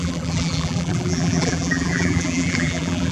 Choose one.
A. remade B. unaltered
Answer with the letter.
A